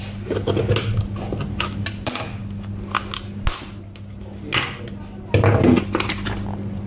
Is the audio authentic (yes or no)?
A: yes